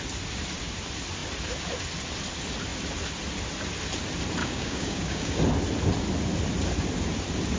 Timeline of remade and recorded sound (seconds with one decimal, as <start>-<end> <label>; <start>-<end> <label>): 0.0-4.4 recorded; 4.4-5.4 remade; 5.4-7.6 recorded